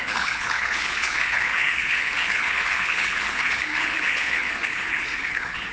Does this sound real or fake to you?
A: fake